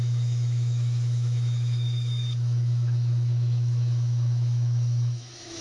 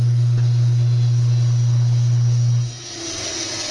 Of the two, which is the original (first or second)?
second